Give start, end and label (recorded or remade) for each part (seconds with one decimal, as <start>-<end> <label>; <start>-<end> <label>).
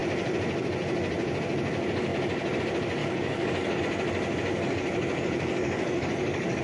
0.0-3.0 recorded; 3.0-3.8 remade; 3.8-4.5 recorded; 4.5-6.6 remade